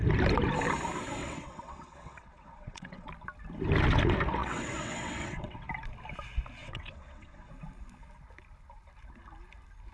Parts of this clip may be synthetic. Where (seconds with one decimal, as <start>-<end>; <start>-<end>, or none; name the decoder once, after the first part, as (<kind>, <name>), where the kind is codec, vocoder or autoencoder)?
1.2-3.1 (vocoder, WaveNeXt); 4.4-5.7; 6.6-7.5